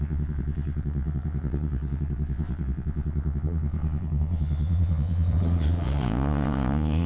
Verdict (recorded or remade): remade